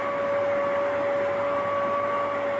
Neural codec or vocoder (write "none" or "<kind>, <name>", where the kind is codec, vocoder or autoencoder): none